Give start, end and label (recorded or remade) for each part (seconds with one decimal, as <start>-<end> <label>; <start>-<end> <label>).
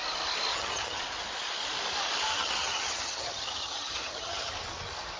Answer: 0.0-0.5 recorded; 0.5-1.0 remade; 1.0-2.3 recorded; 2.3-4.5 remade; 4.5-5.2 recorded